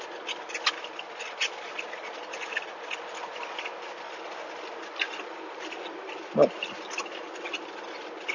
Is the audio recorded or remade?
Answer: recorded